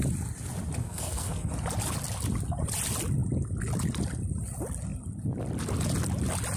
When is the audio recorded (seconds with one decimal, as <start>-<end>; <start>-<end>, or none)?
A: 0.0-0.8; 1.5-6.6